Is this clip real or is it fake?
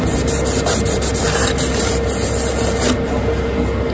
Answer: real